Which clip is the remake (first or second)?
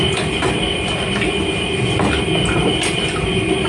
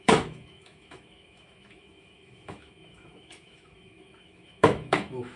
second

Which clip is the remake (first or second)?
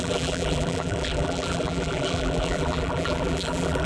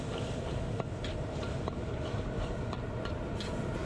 first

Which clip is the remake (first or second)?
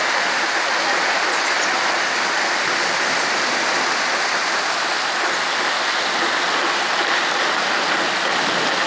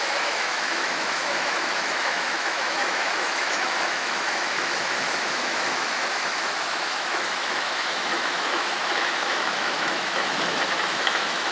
second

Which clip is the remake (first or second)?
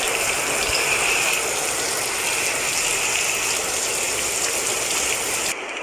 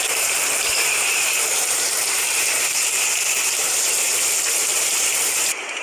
second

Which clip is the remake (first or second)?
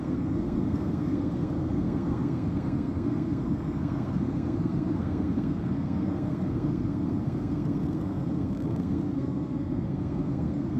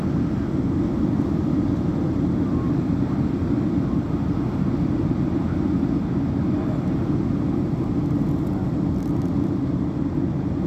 first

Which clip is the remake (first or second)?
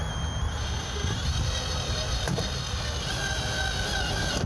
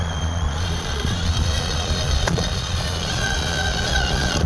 second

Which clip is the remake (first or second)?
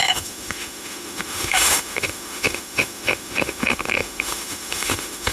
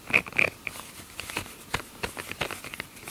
first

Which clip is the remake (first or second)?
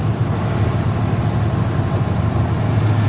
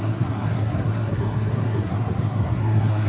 second